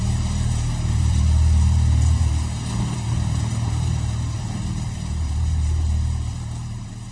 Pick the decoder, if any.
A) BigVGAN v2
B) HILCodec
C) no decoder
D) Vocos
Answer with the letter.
A